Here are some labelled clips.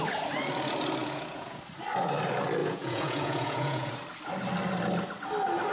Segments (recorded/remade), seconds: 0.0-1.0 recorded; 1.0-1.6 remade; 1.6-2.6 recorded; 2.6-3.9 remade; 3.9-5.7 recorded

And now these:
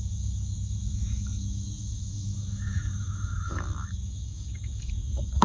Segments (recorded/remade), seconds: 0.0-5.4 remade